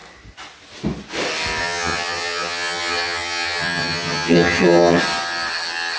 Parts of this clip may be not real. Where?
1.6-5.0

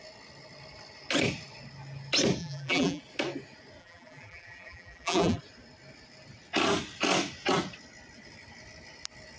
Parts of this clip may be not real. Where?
2.4-3.0; 3.8-5.4

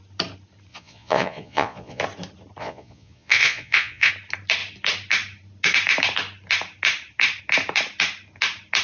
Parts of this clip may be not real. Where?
0.7-2.0; 2.6-4.1

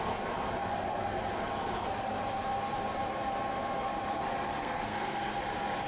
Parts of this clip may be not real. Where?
4.6-5.3

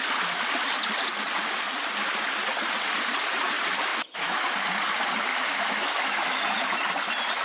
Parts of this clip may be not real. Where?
3.9-4.5; 5.3-6.4

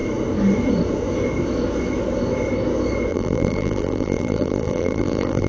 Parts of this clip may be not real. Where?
3.1-5.5

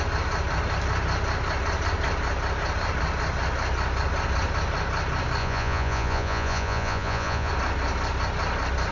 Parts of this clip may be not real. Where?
5.4-7.5

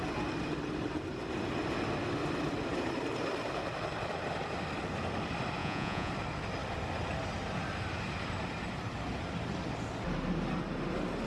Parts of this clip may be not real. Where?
5.6-6.1